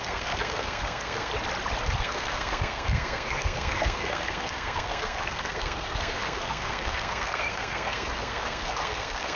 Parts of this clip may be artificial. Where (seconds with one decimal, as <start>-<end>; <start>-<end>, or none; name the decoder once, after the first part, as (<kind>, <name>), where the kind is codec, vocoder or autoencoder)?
0.0-1.3 (codec, SNAC); 2.0-9.4